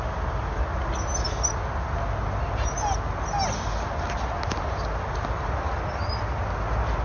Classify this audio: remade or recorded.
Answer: recorded